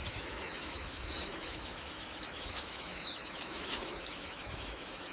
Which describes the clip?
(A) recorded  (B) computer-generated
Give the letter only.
B